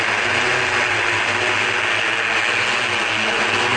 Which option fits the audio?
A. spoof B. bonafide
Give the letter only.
B